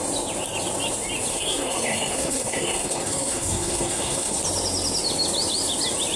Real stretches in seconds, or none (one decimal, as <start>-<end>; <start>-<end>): 0.0-1.3; 4.4-6.2